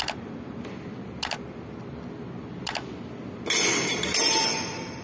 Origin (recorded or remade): recorded